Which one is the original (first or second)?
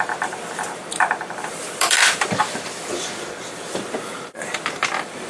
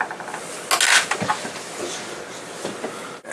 second